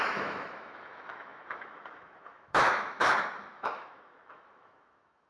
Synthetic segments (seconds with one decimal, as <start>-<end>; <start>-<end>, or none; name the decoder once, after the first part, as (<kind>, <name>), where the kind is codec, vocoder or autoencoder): 0.0-5.3 (autoencoder, DAC-VAE)